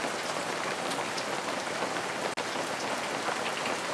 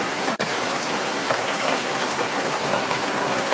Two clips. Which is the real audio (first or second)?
first